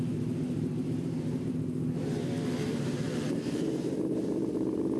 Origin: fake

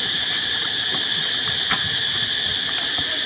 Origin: real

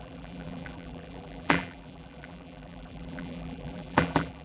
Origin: fake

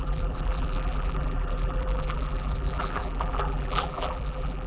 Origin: fake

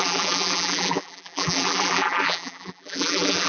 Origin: fake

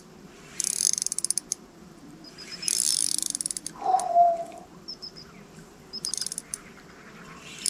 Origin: fake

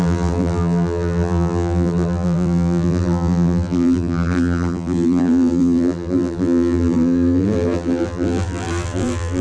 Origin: fake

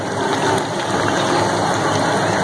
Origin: real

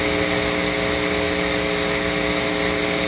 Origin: real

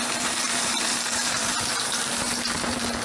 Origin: fake